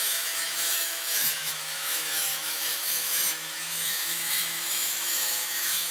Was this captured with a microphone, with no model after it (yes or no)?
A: no